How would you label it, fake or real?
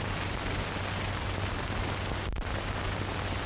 real